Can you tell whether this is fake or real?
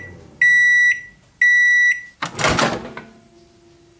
real